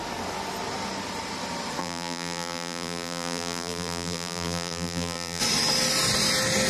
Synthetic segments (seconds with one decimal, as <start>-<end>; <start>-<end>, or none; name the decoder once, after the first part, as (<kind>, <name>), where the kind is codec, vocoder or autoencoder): 1.8-5.4 (vocoder, BigVGAN v2)